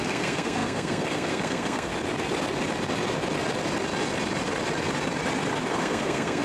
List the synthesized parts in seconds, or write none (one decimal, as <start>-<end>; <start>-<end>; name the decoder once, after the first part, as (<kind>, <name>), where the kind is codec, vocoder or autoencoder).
0.0-1.9 (codec, SNAC); 5.7-6.4